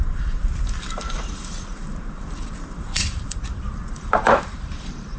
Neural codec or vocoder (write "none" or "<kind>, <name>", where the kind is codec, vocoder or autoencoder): vocoder, BigVGAN v2